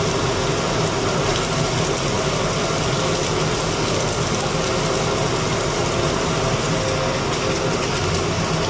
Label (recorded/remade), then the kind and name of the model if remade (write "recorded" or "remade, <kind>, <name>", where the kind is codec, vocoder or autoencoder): recorded